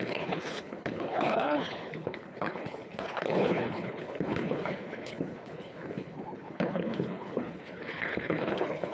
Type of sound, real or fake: fake